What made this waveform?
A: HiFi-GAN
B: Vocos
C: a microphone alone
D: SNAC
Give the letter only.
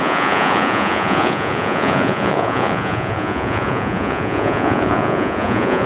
B